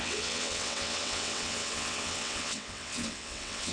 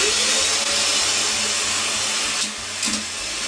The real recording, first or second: second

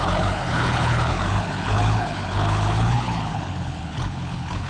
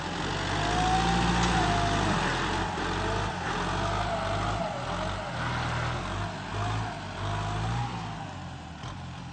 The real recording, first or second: second